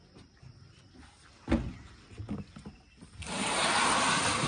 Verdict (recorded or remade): recorded